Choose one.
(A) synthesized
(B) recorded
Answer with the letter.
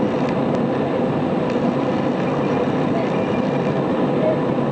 B